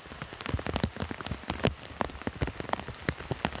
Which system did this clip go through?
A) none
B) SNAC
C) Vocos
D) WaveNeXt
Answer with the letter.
A